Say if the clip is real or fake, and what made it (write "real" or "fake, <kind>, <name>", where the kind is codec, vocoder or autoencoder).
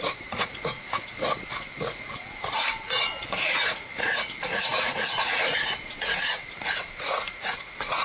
fake, vocoder, Vocos